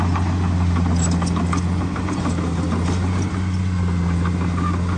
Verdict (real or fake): real